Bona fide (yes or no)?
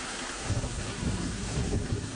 no